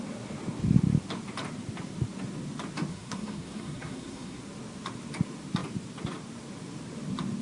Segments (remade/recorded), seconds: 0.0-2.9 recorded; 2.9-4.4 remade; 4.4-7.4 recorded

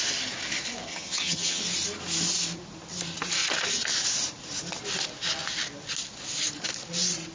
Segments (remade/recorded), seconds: 0.0-0.9 recorded; 0.9-1.6 remade; 1.6-7.3 recorded

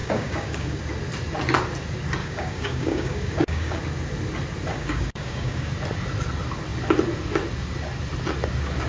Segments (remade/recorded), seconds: 0.0-0.8 remade; 0.8-2.2 recorded; 2.2-3.8 remade; 3.8-4.7 recorded; 4.7-5.7 remade; 5.7-8.9 recorded

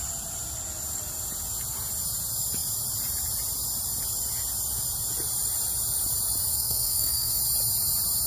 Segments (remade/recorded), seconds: 0.0-6.5 recorded; 6.5-7.4 remade; 7.4-8.3 recorded

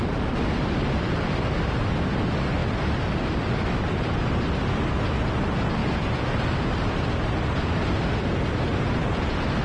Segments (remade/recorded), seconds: 0.0-9.6 recorded